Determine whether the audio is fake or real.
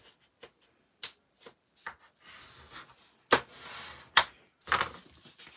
real